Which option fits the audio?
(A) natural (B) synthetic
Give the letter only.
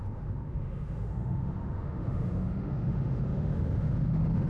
B